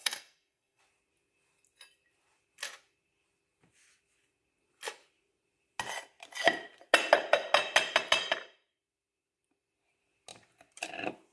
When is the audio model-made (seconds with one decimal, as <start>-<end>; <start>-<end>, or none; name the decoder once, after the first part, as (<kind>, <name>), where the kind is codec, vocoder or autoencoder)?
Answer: 0.0-0.8 (codec, SNAC)